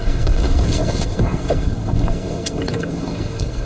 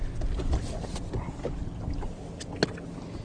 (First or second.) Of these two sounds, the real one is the second